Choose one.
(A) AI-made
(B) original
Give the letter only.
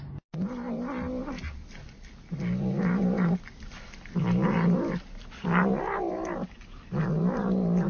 B